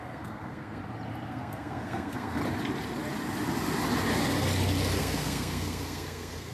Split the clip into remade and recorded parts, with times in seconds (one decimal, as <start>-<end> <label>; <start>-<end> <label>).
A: 0.0-0.8 remade; 0.8-1.3 recorded; 1.3-2.4 remade; 2.4-5.0 recorded; 5.0-6.5 remade